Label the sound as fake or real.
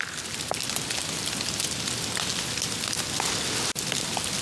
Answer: real